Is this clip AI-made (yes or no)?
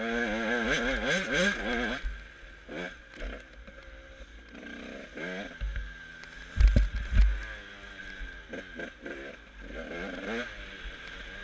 no